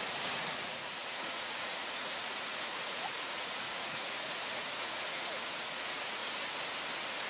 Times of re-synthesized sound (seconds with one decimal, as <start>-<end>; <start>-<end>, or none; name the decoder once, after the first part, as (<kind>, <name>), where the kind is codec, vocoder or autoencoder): 0.0-6.2 (vocoder, Vocos)